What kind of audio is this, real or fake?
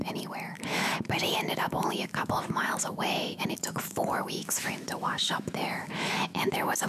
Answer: fake